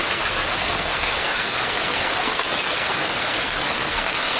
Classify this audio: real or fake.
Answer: fake